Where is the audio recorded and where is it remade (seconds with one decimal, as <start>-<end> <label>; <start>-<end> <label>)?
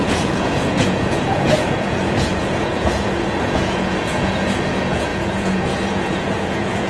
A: 0.0-6.9 remade